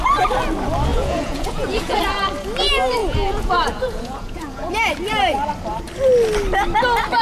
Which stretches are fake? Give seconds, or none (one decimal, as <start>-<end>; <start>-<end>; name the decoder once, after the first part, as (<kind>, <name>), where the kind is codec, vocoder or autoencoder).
0.9-2.0 (vocoder, Vocos); 3.0-4.7